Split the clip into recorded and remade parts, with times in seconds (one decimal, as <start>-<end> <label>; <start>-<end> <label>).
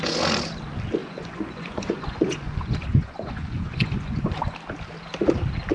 0.0-1.0 recorded; 1.0-4.4 remade; 4.4-5.7 recorded